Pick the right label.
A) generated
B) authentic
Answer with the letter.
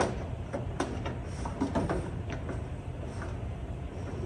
A